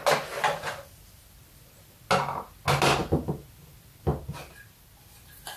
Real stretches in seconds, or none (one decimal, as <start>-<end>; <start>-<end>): 0.0-5.6